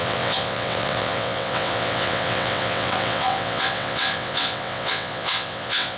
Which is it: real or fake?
fake